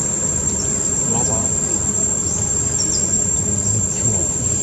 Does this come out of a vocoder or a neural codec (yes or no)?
yes